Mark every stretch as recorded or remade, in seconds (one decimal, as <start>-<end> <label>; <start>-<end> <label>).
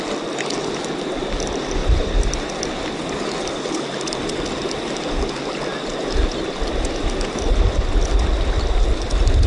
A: 0.0-9.5 recorded